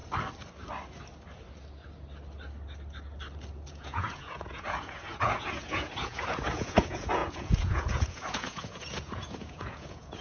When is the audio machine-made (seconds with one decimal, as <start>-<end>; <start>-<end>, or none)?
3.7-10.2